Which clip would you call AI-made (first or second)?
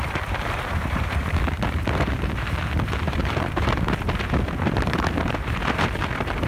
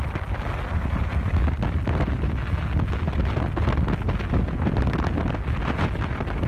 first